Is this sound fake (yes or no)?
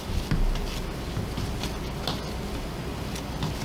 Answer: no